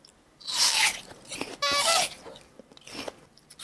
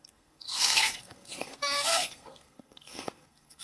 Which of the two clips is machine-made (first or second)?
second